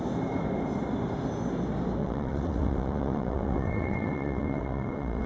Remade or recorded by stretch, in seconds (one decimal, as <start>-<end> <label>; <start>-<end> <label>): 0.0-2.0 recorded; 2.0-5.3 remade